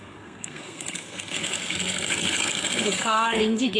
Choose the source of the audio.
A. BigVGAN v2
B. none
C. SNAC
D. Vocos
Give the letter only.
C